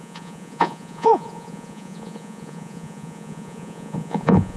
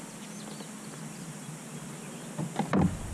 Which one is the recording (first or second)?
second